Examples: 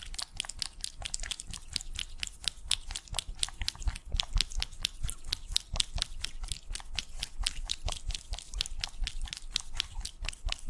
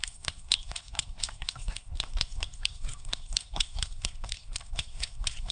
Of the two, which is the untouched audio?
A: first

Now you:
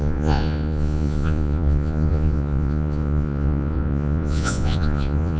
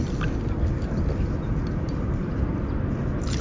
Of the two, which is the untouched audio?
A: second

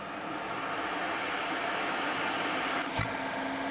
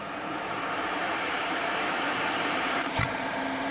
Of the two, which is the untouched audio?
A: first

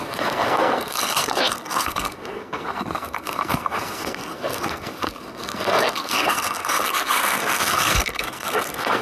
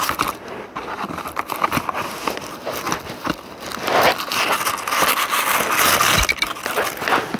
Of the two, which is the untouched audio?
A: second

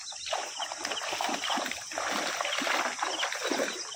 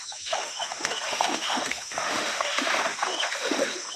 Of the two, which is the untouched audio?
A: first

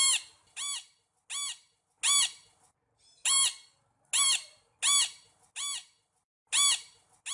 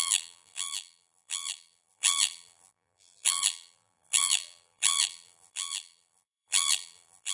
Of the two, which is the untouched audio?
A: first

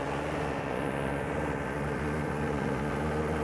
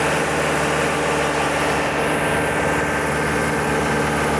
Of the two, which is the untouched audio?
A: second